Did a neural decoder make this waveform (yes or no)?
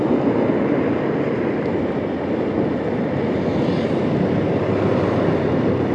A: no